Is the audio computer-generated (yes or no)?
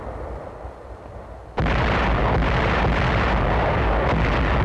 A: no